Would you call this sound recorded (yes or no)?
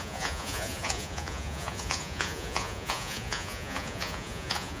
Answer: no